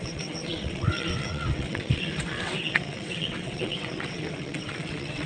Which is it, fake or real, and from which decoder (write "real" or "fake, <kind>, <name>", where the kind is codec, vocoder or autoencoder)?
fake, vocoder, WaveNeXt